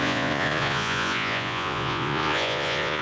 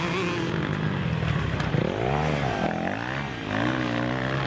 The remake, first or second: first